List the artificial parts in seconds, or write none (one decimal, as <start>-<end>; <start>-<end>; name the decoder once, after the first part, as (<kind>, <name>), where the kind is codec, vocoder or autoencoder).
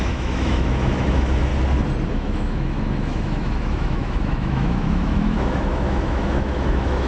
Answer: 0.0-1.5 (autoencoder, DAC-VAE); 2.1-7.1